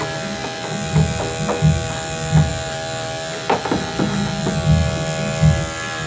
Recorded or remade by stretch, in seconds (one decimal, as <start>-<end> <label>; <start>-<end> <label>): 0.0-6.1 recorded